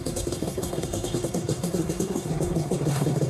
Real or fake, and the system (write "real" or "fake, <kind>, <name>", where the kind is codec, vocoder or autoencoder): fake, codec, SNAC